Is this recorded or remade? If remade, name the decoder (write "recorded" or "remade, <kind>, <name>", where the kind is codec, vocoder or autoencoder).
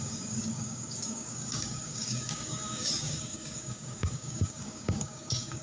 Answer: remade, codec, DAC